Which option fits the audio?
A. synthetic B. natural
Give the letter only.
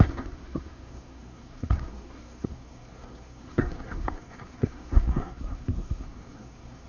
A